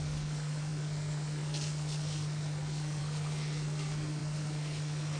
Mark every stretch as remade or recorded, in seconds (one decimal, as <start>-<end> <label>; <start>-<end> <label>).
0.0-5.2 remade